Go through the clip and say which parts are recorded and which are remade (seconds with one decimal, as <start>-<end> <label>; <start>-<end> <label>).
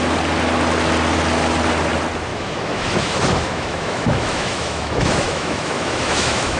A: 0.0-2.3 recorded; 2.3-6.6 remade